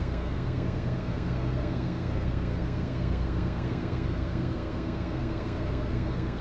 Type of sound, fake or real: fake